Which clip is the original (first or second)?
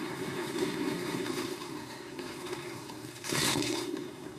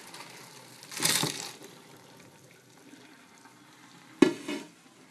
second